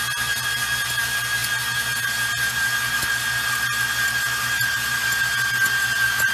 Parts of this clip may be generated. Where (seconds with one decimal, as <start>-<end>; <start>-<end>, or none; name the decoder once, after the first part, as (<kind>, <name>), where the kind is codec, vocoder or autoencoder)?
none